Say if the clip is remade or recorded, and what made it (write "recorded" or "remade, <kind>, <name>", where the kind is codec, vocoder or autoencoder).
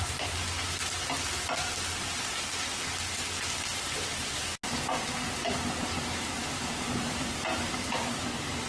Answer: recorded